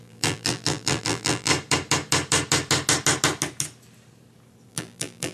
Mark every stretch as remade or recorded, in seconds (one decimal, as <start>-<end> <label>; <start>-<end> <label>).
0.0-1.5 remade; 1.5-4.7 recorded; 4.7-5.3 remade